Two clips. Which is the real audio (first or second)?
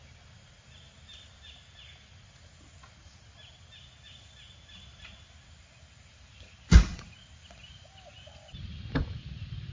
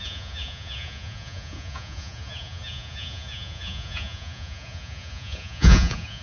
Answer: first